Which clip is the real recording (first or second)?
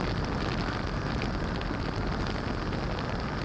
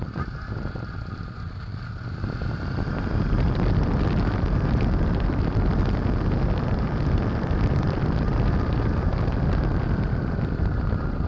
first